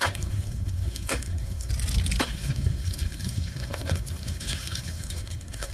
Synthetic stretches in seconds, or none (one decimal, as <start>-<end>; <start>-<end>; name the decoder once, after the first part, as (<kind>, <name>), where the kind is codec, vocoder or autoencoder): 0.0-1.7 (codec, SNAC); 2.2-5.7